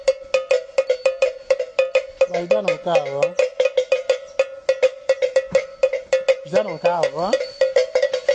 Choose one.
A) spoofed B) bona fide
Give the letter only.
B